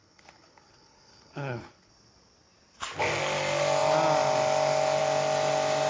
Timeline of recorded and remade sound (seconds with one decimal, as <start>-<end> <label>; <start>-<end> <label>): 0.0-1.9 remade; 1.9-5.9 recorded